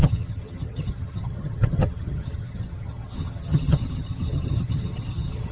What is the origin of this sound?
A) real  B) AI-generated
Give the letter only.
B